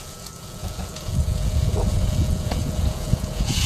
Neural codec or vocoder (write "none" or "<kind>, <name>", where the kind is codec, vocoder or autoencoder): vocoder, Vocos